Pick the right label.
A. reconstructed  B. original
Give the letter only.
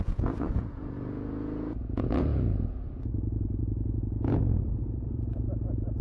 A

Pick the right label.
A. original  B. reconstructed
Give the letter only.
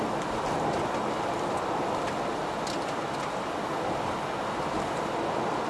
A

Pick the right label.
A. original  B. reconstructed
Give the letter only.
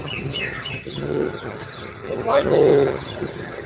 B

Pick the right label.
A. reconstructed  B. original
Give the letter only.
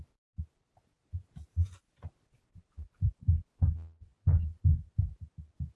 B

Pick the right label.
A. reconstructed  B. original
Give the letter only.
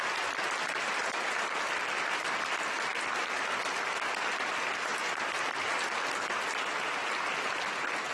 B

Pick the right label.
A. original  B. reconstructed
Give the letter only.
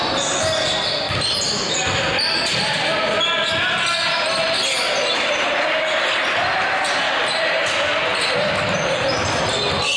A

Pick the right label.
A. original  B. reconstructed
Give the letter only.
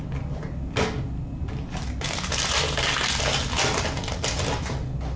A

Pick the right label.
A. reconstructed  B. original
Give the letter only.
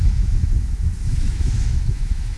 A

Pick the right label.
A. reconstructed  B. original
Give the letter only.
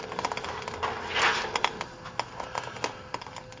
B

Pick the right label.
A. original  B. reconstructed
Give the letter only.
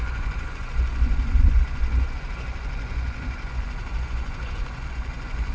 B